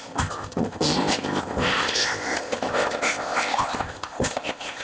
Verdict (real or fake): fake